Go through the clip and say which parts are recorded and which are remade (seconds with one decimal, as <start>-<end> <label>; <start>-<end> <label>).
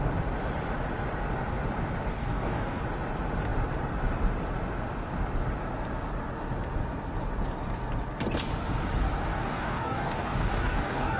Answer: 0.0-2.1 recorded; 2.1-2.8 remade; 2.8-9.3 recorded; 9.3-11.2 remade